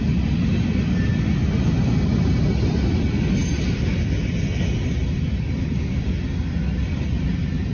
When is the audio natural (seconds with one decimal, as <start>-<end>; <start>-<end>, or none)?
0.0-7.7